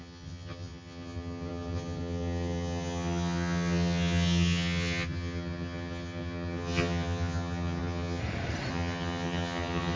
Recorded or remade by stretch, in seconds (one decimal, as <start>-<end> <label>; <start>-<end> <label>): 0.0-8.2 remade; 8.2-8.7 recorded; 8.7-10.0 remade